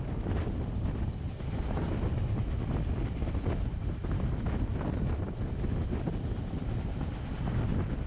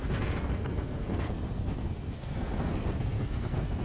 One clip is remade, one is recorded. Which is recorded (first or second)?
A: first